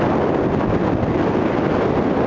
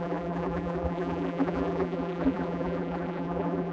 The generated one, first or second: second